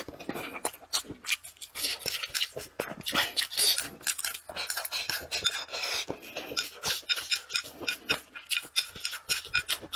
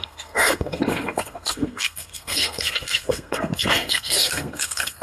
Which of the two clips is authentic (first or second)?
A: first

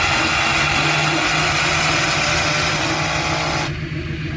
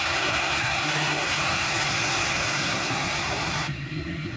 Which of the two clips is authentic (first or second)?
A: first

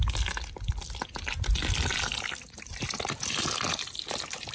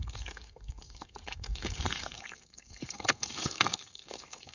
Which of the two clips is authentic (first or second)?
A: first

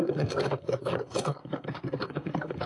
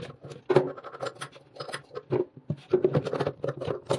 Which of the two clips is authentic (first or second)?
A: second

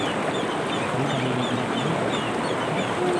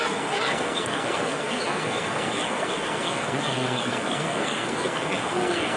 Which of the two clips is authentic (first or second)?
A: first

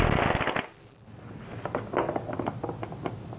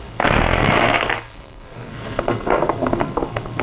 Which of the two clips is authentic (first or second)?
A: first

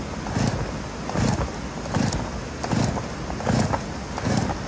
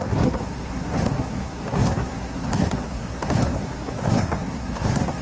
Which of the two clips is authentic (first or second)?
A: first